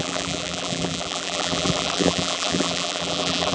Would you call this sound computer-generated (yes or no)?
yes